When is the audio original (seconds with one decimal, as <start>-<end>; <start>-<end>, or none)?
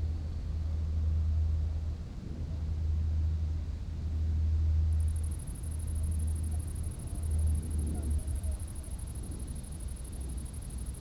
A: 0.0-8.2; 8.9-11.0